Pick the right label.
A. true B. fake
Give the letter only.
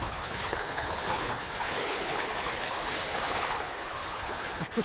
B